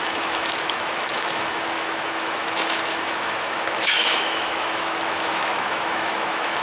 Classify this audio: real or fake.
fake